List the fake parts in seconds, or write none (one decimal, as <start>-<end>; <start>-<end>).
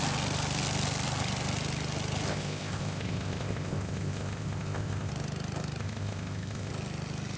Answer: 2.3-5.1; 5.8-6.7